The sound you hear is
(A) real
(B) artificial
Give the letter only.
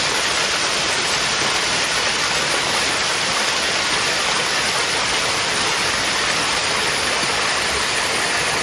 A